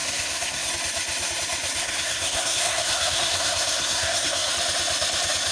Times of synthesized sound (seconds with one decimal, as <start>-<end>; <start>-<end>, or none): 0.0-0.7; 1.8-4.5